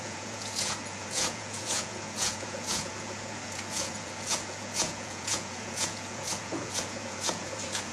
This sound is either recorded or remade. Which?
remade